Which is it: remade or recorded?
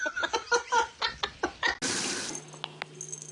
recorded